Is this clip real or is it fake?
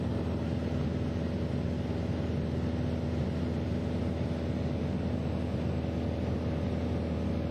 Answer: real